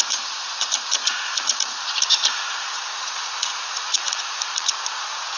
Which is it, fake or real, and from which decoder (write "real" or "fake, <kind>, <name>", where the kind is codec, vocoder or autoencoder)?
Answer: fake, vocoder, Vocos